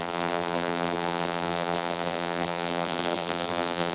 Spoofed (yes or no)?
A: yes